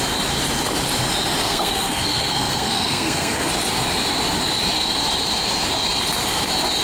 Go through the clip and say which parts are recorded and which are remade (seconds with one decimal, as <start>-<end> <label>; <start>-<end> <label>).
0.0-1.4 recorded; 1.4-3.5 remade; 3.5-6.8 recorded